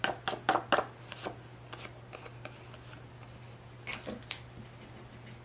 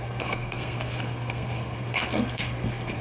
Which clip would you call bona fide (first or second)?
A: first